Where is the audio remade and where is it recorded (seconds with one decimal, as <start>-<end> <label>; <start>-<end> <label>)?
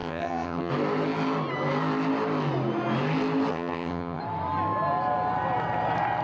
0.0-0.7 remade; 0.7-3.5 recorded; 3.5-4.2 remade; 4.2-6.2 recorded